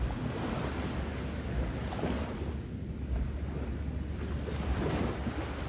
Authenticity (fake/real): real